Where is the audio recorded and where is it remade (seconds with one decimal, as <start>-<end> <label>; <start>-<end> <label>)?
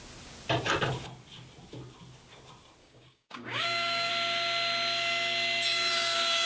0.0-2.8 recorded; 2.8-4.1 remade; 4.1-5.7 recorded; 5.7-6.5 remade